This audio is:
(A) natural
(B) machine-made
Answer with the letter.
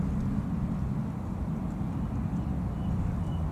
A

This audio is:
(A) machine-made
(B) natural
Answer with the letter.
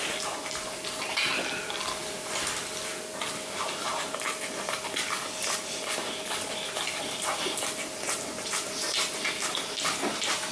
B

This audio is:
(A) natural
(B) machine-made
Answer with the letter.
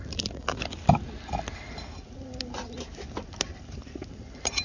A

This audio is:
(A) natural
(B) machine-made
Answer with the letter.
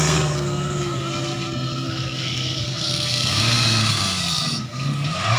B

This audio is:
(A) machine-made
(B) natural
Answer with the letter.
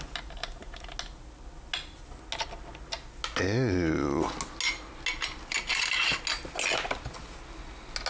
B